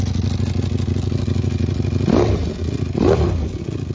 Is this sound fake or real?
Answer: real